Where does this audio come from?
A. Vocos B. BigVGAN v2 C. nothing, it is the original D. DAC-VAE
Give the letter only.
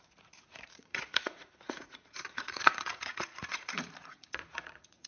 A